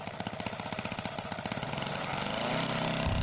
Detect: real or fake real